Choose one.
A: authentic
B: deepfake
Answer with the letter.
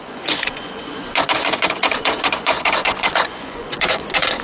B